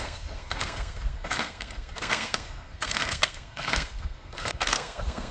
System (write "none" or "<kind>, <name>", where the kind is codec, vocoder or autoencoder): codec, SNAC